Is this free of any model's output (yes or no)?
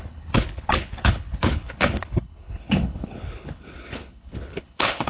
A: no